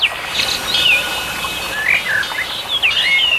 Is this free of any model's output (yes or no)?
yes